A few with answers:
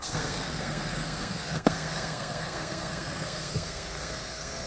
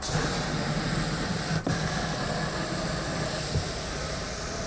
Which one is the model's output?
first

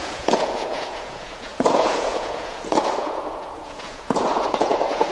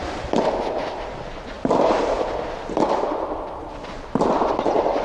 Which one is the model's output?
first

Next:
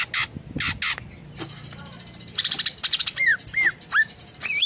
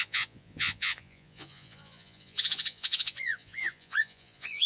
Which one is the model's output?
second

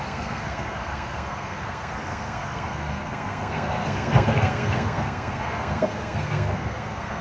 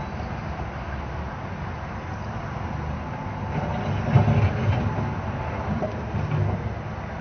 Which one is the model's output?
first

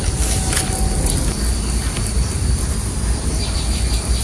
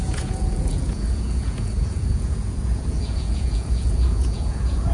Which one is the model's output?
second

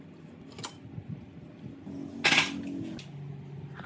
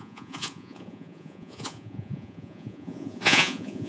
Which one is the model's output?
second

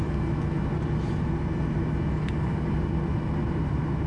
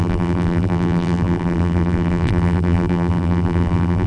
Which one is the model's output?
second